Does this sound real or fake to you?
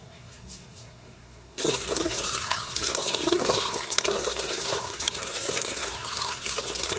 fake